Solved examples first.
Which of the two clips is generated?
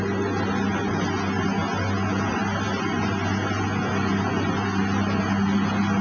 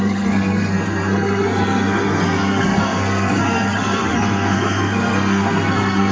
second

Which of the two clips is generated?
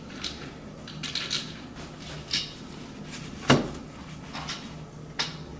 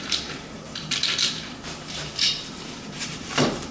second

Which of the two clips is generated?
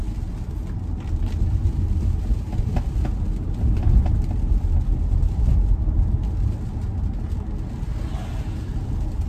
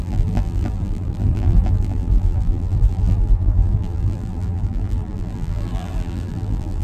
second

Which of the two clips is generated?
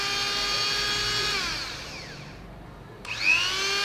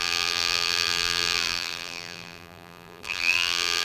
second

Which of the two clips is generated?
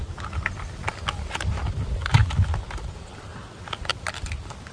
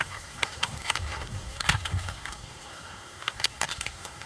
second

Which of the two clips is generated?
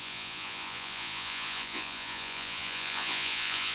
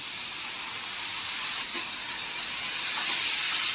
first